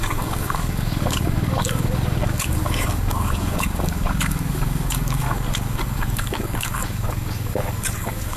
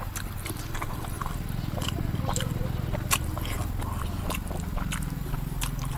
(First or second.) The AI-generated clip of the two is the first